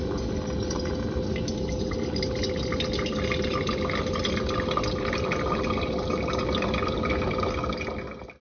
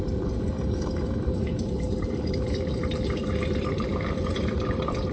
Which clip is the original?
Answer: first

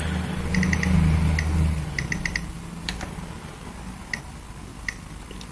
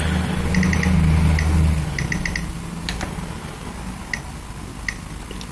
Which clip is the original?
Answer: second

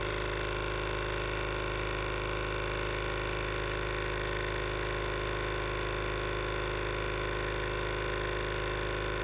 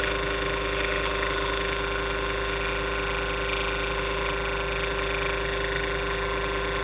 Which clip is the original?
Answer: first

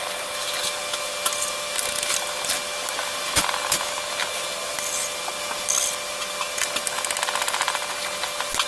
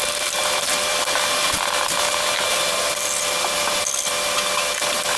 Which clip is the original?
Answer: first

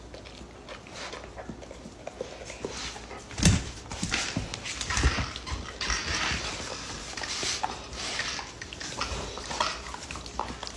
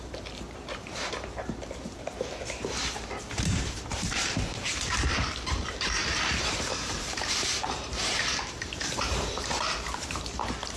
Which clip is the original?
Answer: first